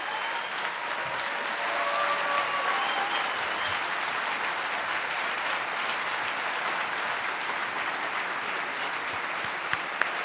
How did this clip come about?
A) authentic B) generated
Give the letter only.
A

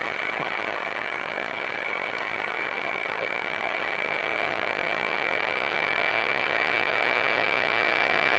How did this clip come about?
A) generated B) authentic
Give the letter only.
A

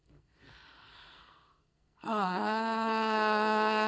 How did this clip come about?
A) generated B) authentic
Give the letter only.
A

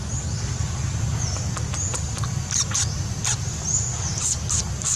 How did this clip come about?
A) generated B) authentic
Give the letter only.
B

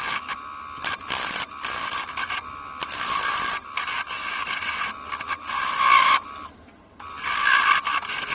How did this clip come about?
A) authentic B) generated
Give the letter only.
A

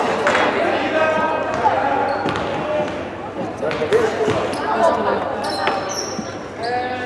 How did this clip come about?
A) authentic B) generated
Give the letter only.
A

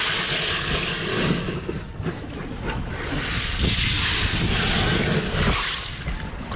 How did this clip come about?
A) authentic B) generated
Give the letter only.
A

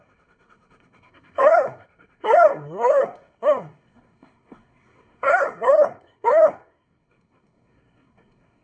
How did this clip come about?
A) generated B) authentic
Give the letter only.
A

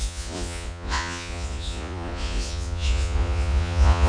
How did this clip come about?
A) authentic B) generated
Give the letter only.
B